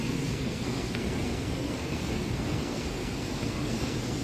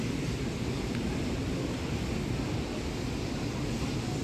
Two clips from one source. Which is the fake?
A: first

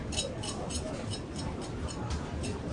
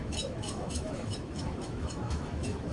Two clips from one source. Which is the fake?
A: second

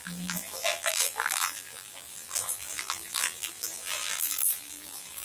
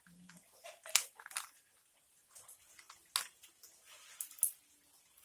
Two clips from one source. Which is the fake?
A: first